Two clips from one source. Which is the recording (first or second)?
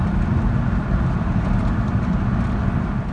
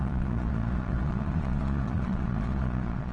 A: first